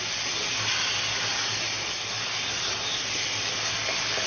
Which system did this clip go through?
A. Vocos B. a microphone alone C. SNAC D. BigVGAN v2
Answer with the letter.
B